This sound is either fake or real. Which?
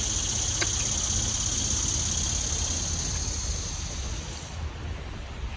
real